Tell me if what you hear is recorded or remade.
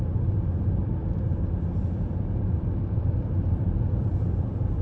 remade